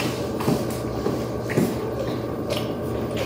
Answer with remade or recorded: remade